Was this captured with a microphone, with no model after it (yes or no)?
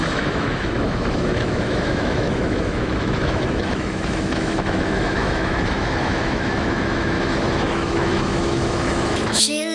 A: no